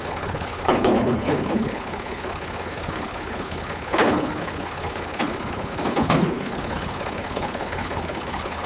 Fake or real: fake